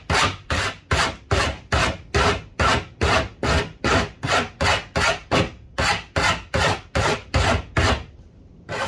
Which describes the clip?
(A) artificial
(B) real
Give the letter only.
B